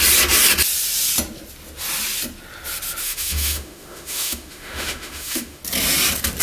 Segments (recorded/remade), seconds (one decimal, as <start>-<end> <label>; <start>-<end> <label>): 0.0-3.0 recorded; 3.0-5.6 remade; 5.6-6.4 recorded